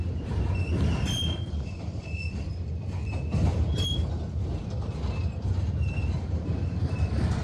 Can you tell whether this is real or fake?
fake